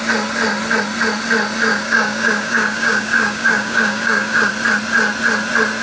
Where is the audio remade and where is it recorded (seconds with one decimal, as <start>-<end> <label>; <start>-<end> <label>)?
0.0-1.7 recorded; 1.7-4.5 remade; 4.5-5.8 recorded